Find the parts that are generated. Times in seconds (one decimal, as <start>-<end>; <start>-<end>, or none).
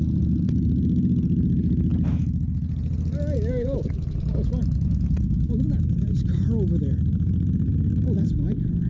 none